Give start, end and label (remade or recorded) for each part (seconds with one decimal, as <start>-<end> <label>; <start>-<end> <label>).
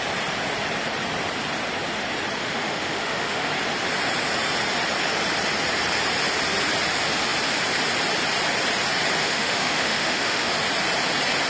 0.0-2.4 recorded; 2.4-3.5 remade; 3.5-9.2 recorded; 9.2-10.5 remade; 10.5-11.5 recorded